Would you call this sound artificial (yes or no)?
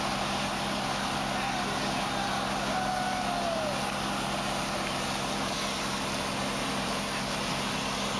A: no